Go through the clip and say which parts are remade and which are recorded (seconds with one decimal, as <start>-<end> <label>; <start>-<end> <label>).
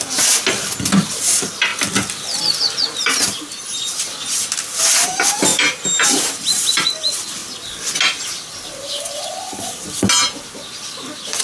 0.0-5.5 recorded; 5.5-6.7 remade; 6.7-11.4 recorded